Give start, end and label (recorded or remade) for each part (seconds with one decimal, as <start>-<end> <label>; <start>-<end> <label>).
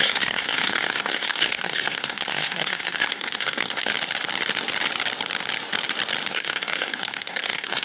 0.0-3.9 remade; 3.9-6.3 recorded; 6.3-7.8 remade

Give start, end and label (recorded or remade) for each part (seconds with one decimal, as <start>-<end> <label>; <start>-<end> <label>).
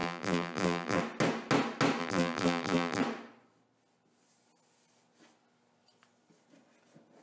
0.0-1.0 remade; 1.0-2.0 recorded; 2.0-3.0 remade; 3.0-7.2 recorded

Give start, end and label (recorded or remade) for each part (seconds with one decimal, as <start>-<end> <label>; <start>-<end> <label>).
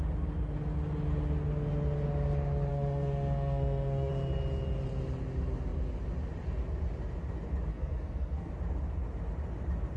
0.0-2.7 recorded; 2.7-4.1 remade; 4.1-7.7 recorded; 7.7-8.5 remade; 8.5-10.0 recorded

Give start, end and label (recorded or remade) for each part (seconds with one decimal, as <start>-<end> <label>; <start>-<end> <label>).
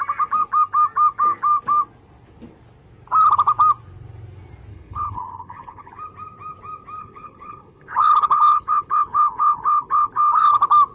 0.0-4.7 recorded; 4.7-5.9 remade; 5.9-7.0 recorded; 7.0-10.5 remade; 10.5-10.9 recorded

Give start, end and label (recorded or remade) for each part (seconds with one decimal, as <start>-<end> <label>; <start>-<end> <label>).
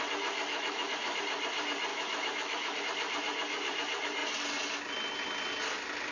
0.0-0.4 recorded; 0.4-1.2 remade; 1.2-1.9 recorded; 1.9-2.8 remade; 2.8-6.1 recorded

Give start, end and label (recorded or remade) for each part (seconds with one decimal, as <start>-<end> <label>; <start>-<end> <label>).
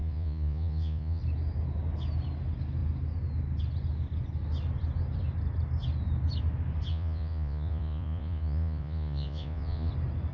0.0-1.2 remade; 1.2-6.9 recorded; 6.9-9.9 remade; 9.9-10.3 recorded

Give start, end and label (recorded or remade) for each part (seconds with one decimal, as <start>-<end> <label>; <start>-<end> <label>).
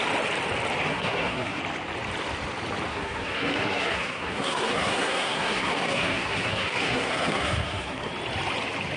0.0-0.9 recorded; 0.9-1.6 remade; 1.6-2.9 recorded; 2.9-8.1 remade; 8.1-9.0 recorded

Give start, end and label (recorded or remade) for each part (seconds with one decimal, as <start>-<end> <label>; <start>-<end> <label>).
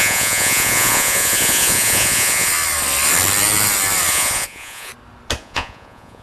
0.0-2.5 remade; 2.5-4.1 recorded; 4.1-4.9 remade; 4.9-5.4 recorded; 5.4-6.2 remade